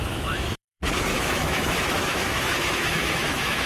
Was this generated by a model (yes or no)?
yes